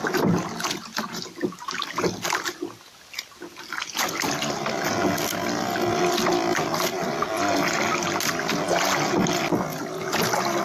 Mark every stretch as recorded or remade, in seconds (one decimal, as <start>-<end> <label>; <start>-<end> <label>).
0.0-10.6 recorded